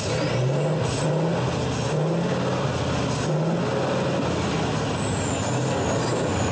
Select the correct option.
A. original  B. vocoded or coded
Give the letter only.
A